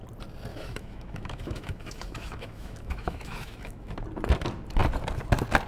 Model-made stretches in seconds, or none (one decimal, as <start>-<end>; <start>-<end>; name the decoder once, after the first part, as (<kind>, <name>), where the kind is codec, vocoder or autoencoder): 0.5-3.9 (autoencoder, DAC-VAE)

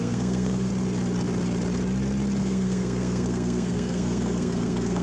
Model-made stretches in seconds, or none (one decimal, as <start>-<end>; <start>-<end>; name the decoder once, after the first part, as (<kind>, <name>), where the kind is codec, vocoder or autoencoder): 0.0-0.7 (codec, SNAC); 2.4-5.0